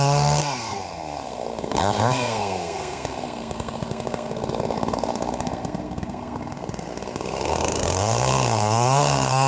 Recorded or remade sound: remade